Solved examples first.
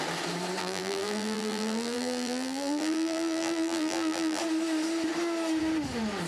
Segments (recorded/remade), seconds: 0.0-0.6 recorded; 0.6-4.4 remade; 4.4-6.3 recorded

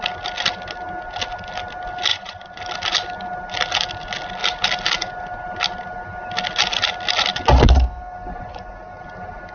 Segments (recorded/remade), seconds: 0.0-2.1 recorded; 2.1-2.6 remade; 2.6-9.5 recorded

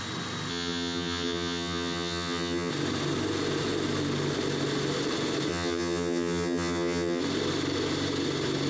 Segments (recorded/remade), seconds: 0.0-0.5 recorded; 0.5-2.7 remade; 2.7-5.5 recorded; 5.5-7.2 remade; 7.2-8.7 recorded

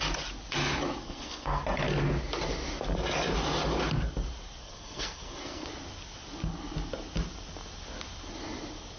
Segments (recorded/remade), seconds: 0.0-1.0 recorded; 1.0-1.6 remade; 1.6-4.6 recorded; 4.6-5.7 remade; 5.7-9.0 recorded